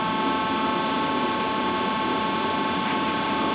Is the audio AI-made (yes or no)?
no